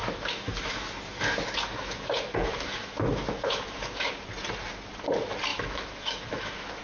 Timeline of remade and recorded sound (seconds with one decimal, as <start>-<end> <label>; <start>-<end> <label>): 0.0-4.1 remade; 4.1-5.5 recorded; 5.5-6.8 remade